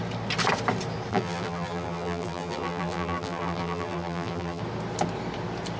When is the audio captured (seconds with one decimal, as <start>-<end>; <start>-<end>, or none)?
0.0-1.1; 4.6-5.8